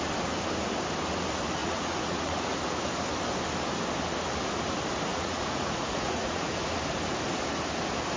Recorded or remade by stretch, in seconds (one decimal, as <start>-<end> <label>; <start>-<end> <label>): 0.0-1.6 recorded; 1.6-2.6 remade; 2.6-5.1 recorded; 5.1-6.5 remade; 6.5-8.2 recorded